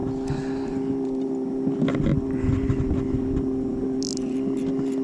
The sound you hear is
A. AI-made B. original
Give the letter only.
B